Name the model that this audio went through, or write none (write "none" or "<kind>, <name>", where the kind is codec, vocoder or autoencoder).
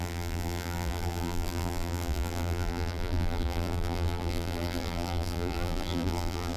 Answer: vocoder, BigVGAN v2